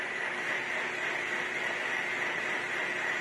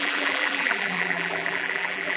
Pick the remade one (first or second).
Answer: second